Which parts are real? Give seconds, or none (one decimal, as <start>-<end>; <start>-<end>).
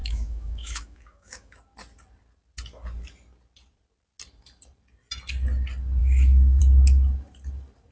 1.6-6.0; 6.6-7.9